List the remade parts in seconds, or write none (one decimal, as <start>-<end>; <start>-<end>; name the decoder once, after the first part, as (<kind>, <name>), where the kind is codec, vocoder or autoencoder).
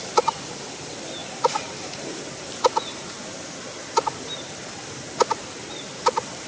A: none